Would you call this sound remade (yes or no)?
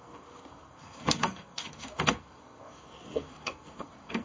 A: yes